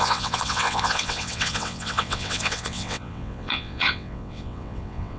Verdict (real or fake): fake